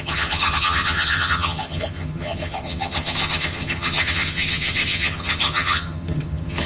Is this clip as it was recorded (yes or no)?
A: no